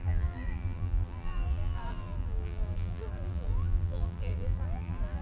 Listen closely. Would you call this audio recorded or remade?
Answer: remade